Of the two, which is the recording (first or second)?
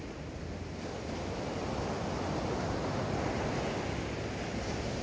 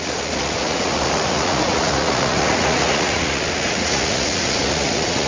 first